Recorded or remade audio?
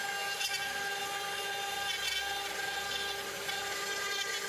recorded